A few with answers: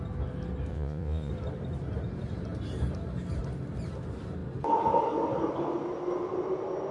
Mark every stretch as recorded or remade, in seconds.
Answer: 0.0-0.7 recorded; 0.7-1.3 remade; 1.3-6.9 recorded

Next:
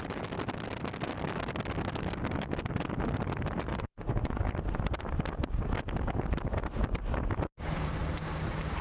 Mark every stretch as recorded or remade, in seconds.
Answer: 0.0-3.7 recorded; 3.7-4.4 remade; 4.4-8.8 recorded

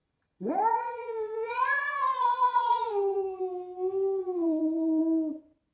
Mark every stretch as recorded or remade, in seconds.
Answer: 0.0-3.4 remade; 3.4-4.2 recorded; 4.2-5.0 remade; 5.0-5.7 recorded

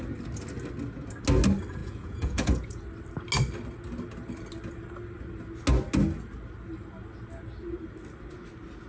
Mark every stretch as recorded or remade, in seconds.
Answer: 0.0-1.8 recorded; 1.8-2.8 remade; 2.8-8.9 recorded

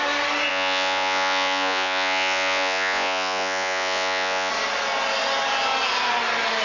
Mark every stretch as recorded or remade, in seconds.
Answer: 0.0-0.5 recorded; 0.5-4.5 remade; 4.5-6.6 recorded

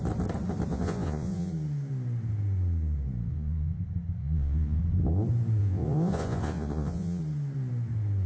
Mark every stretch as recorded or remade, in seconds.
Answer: 0.0-0.7 recorded; 0.7-1.5 remade; 1.5-3.3 recorded; 3.3-3.8 remade; 3.8-4.2 recorded; 4.2-4.8 remade; 4.8-5.6 recorded; 5.6-7.2 remade; 7.2-8.3 recorded

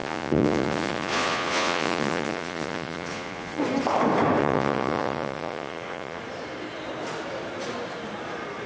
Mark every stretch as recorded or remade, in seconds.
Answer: 0.0-3.6 remade; 3.6-4.4 recorded; 4.4-6.2 remade; 6.2-8.7 recorded

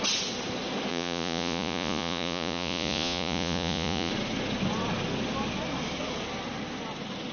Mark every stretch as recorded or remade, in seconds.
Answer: 0.0-0.9 recorded; 0.9-4.1 remade; 4.1-7.3 recorded